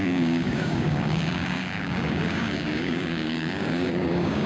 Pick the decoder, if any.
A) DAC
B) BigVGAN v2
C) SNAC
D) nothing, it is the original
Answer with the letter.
A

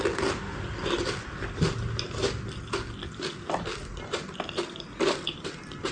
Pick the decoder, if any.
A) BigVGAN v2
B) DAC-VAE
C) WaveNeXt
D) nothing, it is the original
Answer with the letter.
D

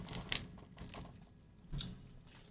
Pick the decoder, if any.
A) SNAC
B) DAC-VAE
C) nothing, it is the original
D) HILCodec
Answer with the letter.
C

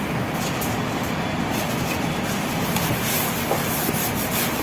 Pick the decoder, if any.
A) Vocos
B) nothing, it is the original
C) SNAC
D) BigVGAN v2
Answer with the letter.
B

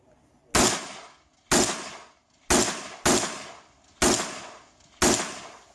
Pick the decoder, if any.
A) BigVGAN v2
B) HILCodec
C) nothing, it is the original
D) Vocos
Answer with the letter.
C